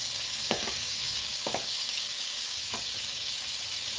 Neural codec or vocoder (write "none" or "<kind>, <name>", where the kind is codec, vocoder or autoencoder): codec, DAC